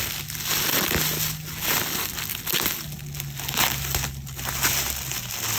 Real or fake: real